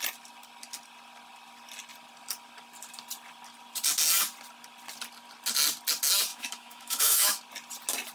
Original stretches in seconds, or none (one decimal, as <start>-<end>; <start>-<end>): 0.0-6.3; 7.4-8.1